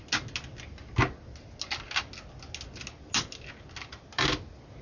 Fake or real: real